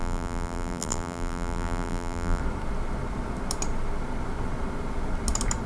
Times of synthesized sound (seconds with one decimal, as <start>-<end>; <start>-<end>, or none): 0.0-2.4